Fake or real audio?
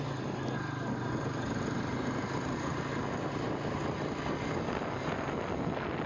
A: real